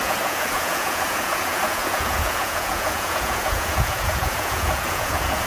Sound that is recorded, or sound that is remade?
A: remade